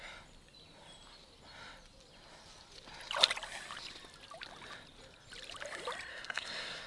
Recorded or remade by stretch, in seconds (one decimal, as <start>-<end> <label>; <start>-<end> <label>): 0.0-6.1 recorded; 6.1-6.9 remade